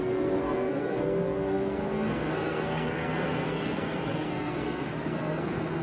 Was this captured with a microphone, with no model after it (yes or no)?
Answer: no